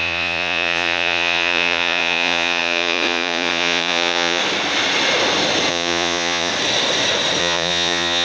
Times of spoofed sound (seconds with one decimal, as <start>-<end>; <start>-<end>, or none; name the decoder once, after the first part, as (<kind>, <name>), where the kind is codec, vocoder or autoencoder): 0.0-4.4 (vocoder, Vocos); 5.7-6.5; 7.4-8.2